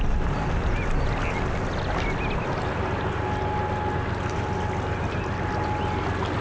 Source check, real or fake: real